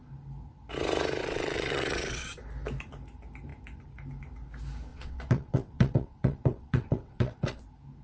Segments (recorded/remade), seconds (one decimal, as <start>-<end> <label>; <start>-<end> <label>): 0.0-1.2 recorded; 1.2-2.4 remade; 2.4-4.9 recorded; 4.9-7.6 remade; 7.6-8.0 recorded